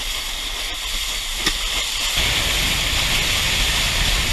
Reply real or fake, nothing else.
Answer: real